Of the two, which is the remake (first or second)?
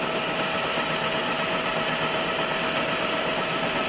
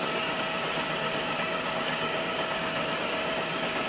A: second